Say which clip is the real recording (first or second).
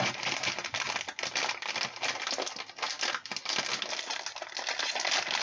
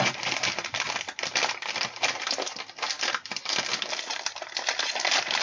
first